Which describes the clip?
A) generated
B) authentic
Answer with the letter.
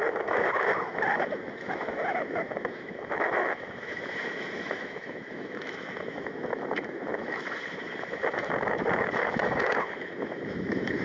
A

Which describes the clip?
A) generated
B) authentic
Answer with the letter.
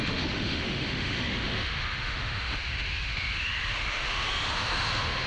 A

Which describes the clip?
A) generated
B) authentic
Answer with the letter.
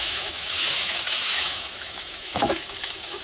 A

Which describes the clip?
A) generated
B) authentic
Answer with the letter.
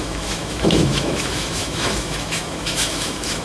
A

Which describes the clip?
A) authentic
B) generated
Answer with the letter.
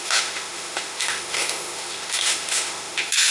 B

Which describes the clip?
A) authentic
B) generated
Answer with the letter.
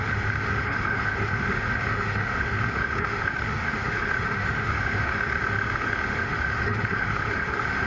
B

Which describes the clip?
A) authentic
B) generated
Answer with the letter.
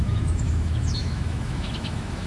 B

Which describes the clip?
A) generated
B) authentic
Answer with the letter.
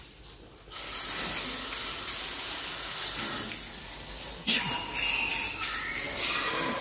B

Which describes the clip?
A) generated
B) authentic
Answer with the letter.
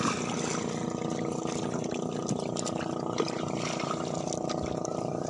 B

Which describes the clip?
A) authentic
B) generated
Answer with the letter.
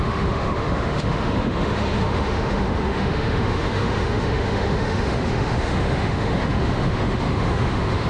B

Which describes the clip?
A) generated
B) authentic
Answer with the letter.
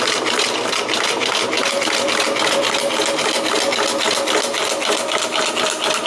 B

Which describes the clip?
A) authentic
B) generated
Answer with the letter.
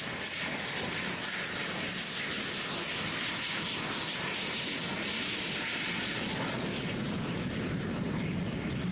A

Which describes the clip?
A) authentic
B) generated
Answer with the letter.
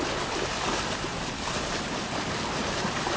A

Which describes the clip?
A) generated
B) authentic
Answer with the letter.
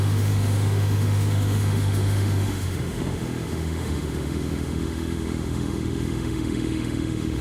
A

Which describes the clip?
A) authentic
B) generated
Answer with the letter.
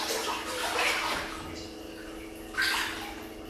A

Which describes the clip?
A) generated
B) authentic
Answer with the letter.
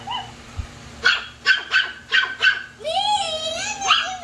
B